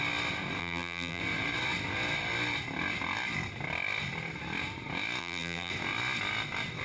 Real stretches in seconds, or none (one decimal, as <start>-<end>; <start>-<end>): 0.0-0.6; 1.2-5.2; 5.7-6.8

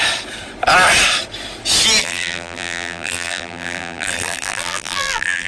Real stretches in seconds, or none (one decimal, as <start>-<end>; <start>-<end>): 0.0-2.0

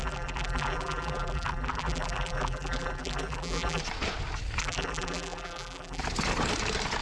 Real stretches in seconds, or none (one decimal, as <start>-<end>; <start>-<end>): 3.8-4.6; 6.0-7.0

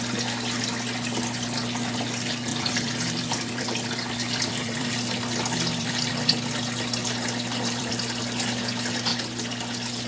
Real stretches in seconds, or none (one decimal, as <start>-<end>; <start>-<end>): 0.0-2.5; 6.1-7.0; 8.2-10.1

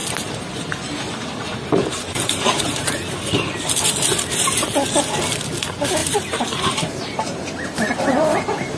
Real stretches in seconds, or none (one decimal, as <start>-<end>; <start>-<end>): 0.7-1.8; 3.2-6.0; 8.4-8.8

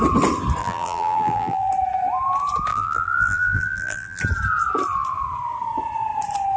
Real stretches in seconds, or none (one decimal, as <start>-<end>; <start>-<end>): 0.0-0.6; 1.7-2.7; 4.2-6.6

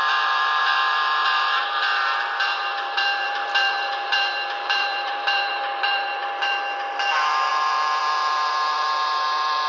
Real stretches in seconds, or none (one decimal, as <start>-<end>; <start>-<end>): 6.2-7.1